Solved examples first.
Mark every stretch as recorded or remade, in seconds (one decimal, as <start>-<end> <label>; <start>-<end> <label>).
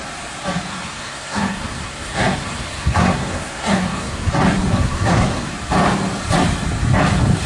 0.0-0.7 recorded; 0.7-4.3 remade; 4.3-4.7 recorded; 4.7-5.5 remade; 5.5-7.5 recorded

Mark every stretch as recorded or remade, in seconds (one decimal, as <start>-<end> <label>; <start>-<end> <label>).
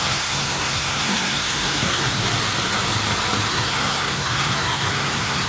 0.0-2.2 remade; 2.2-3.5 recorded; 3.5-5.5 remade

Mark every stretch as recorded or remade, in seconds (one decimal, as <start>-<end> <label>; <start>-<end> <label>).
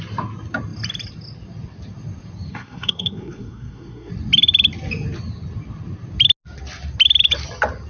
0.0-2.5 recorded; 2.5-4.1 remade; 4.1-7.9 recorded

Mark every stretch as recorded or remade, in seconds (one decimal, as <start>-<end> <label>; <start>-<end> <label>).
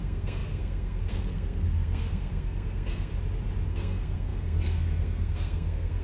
0.0-3.1 remade; 3.1-3.7 recorded; 3.7-6.0 remade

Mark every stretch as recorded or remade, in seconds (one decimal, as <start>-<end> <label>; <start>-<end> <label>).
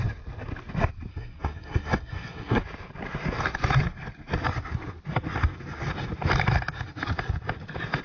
0.0-1.1 recorded; 1.1-2.6 remade; 2.6-8.0 recorded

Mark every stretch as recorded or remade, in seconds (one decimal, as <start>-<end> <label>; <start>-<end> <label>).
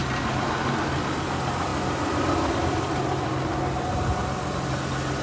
0.0-5.2 recorded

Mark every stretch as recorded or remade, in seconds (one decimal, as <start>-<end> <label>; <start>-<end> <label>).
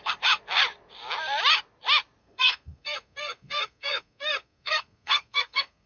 0.0-2.2 recorded; 2.2-5.9 remade